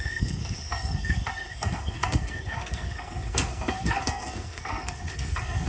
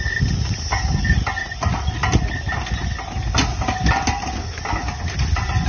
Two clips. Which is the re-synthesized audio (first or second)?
first